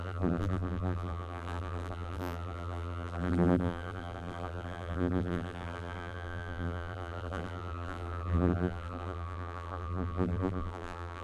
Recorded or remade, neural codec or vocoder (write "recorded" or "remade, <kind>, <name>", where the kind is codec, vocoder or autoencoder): remade, vocoder, BigVGAN v2